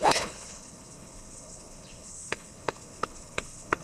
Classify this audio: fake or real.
fake